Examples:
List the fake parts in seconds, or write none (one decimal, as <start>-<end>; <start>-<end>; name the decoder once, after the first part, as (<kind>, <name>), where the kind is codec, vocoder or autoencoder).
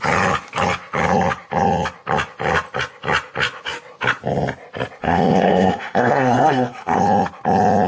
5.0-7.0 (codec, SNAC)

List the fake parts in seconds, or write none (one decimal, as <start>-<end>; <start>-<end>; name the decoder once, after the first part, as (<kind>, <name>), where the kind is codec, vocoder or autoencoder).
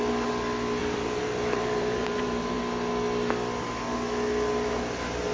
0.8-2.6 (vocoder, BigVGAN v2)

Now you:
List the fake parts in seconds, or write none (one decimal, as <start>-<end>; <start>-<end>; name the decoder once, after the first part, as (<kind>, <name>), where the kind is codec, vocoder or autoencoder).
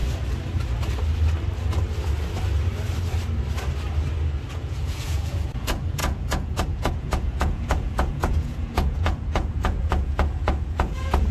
4.5-11.3 (vocoder, Vocos)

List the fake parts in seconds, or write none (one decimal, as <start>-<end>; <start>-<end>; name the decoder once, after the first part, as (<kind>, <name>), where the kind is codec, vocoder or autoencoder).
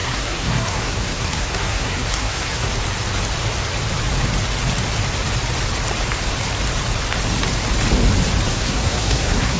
0.0-2.7 (codec, SNAC); 8.5-9.6